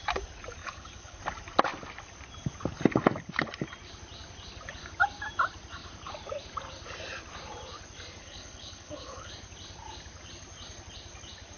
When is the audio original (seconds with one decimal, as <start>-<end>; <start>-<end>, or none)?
0.0-0.6; 1.2-8.2; 9.3-11.6